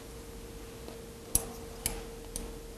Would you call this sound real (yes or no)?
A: yes